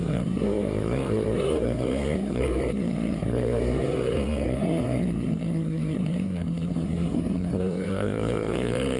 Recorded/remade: remade